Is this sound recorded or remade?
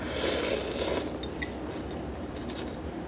recorded